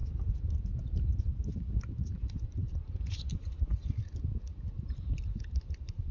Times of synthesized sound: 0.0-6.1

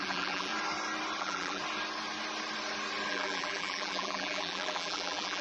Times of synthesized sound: 0.0-0.5; 1.2-1.6; 3.1-5.4

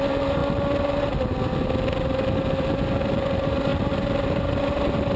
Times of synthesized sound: 0.0-0.4; 2.6-5.2

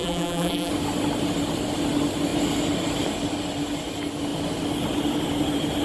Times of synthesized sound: 0.0-0.7

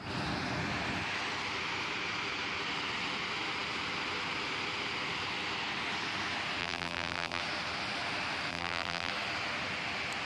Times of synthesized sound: 6.6-7.4; 8.5-9.1

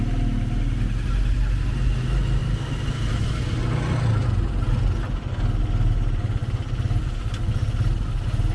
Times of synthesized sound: 2.4-3.2

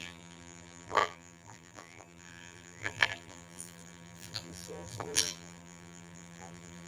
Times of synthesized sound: 0.0-6.9

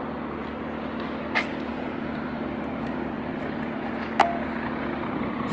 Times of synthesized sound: 1.7-3.4